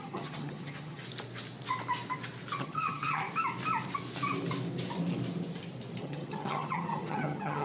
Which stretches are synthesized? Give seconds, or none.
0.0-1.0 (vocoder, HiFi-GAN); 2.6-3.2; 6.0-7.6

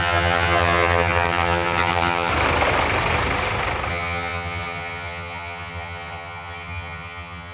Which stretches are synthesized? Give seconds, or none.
0.0-2.3 (vocoder, HiFi-GAN); 3.9-7.5

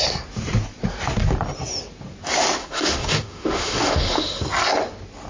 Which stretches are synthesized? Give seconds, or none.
2.6-4.4 (autoencoder, DAC-VAE)

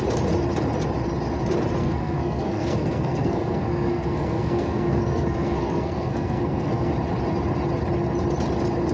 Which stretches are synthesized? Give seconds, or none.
1.8-6.9 (codec, SNAC)

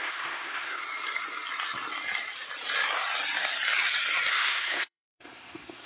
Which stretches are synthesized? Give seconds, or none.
0.0-0.8 (codec, SNAC); 4.3-5.9

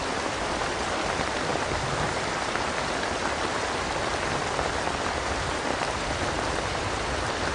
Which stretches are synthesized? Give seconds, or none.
0.0-7.5 (vocoder, BigVGAN v2)

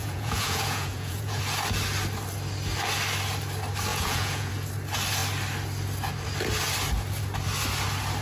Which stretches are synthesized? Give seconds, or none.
0.0-1.4 (vocoder, Vocos); 3.9-4.5

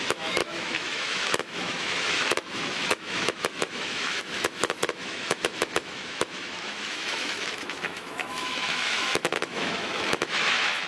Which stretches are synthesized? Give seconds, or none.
0.0-10.9 (autoencoder, DAC-VAE)